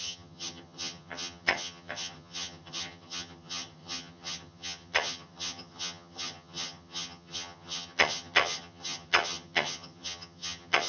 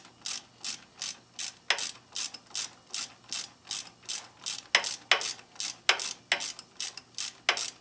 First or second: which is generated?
first